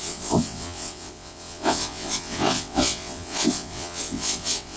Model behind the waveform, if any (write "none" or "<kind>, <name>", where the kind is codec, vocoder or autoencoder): vocoder, WaveNeXt